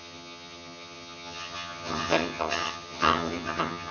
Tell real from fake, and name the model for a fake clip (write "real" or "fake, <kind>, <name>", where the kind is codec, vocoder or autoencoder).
fake, vocoder, HiFi-GAN